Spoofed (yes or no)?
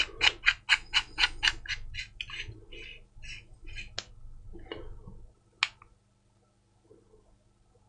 no